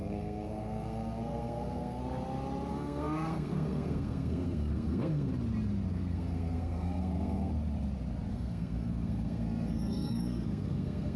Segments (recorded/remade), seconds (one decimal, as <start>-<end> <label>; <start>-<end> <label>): 0.0-2.0 remade; 2.0-2.7 recorded; 2.7-5.3 remade; 5.3-5.9 recorded; 5.9-7.5 remade; 7.5-8.3 recorded; 8.3-11.2 remade